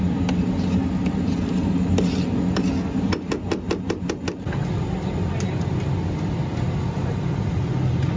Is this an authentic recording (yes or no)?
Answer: yes